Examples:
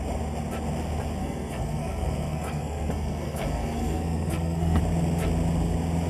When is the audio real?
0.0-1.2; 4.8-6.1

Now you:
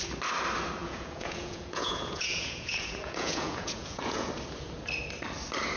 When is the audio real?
0.0-0.8; 4.3-5.8

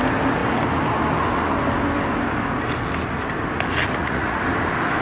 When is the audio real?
0.0-3.8; 4.4-5.0

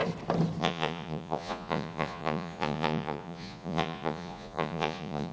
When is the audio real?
0.0-0.6

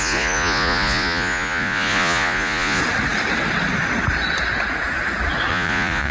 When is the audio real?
2.8-5.5

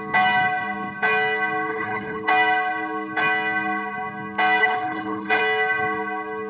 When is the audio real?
0.0-1.7; 2.3-4.6; 5.4-6.5

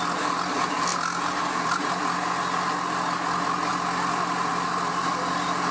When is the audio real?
0.0-5.7